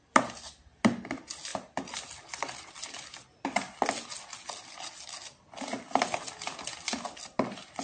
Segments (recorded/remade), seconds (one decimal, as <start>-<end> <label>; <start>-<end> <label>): 0.0-7.8 recorded

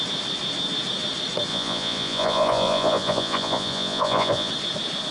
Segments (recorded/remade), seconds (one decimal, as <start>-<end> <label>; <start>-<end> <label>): 0.0-1.5 recorded; 1.5-4.5 remade; 4.5-5.1 recorded

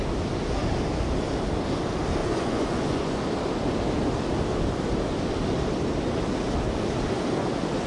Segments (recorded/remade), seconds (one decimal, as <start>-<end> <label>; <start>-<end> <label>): 0.0-2.2 recorded; 2.2-3.2 remade; 3.2-7.9 recorded

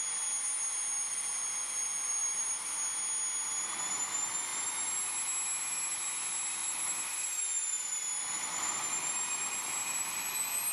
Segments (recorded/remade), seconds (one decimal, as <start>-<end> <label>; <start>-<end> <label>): 0.0-6.6 recorded; 6.6-9.1 remade; 9.1-10.7 recorded

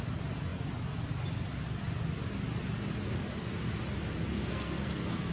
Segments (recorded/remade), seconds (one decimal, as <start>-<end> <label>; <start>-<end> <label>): 0.0-4.3 recorded; 4.3-5.3 remade

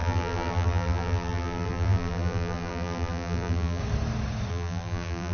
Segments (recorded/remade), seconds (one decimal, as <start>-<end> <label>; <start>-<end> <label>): 0.0-3.8 remade; 3.8-4.5 recorded; 4.5-5.3 remade

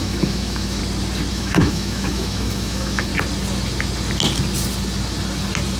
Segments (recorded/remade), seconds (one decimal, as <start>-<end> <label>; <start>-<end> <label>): 0.0-0.8 remade; 0.8-1.3 recorded; 1.3-3.1 remade; 3.1-5.8 recorded